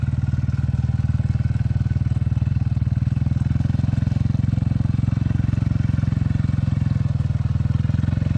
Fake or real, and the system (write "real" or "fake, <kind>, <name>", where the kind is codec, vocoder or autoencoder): real